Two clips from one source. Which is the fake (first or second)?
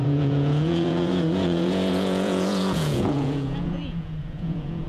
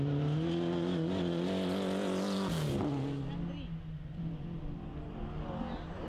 first